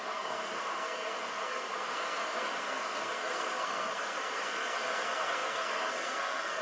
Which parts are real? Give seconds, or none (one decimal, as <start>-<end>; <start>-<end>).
none